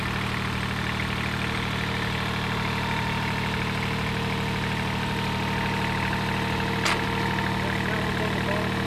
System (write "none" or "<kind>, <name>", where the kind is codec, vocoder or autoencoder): none